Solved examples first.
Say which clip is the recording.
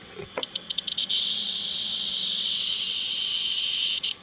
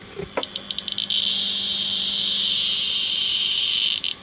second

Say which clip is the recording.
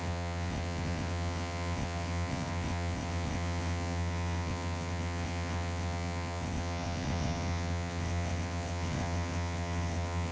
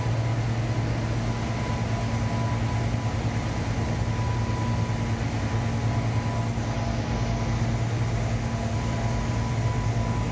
second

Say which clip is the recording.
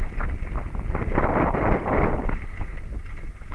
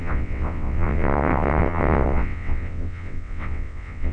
first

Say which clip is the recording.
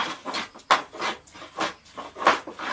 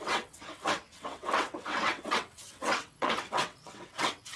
first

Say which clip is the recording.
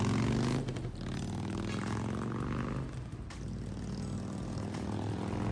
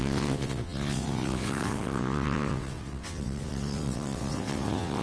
first